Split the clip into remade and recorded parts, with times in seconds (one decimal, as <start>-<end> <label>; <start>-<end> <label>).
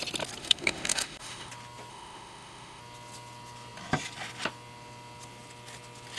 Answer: 0.0-0.4 recorded; 0.4-1.5 remade; 1.5-1.9 recorded; 1.9-2.8 remade; 2.8-6.2 recorded